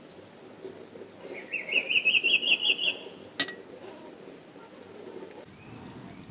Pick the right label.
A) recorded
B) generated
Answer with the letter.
A